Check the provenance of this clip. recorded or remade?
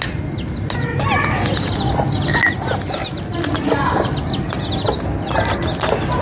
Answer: recorded